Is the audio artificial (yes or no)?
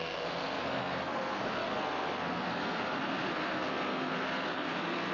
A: yes